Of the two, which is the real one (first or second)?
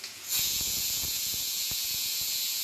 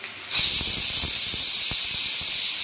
second